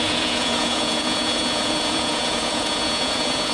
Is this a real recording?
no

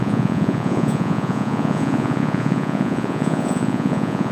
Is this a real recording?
no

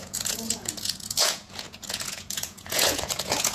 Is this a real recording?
no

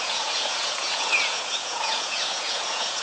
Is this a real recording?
no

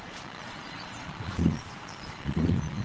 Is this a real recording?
no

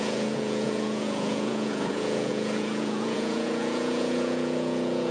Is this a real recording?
no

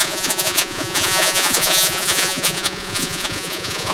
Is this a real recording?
no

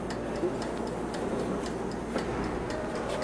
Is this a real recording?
yes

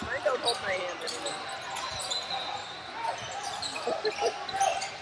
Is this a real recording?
yes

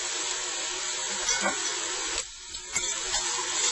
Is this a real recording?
yes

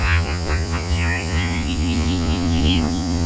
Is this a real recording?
no